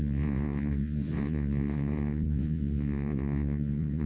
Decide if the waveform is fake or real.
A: fake